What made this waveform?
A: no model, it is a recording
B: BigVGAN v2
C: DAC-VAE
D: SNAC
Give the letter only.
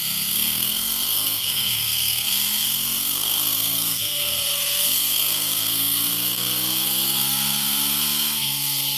D